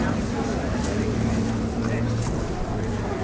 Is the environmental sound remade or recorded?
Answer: recorded